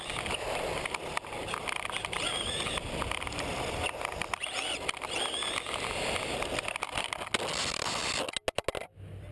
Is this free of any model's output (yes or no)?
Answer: yes